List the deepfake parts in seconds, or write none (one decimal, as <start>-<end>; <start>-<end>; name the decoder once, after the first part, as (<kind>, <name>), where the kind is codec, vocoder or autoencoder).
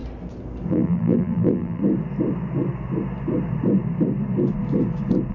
0.7-1.8 (vocoder, BigVGAN v2)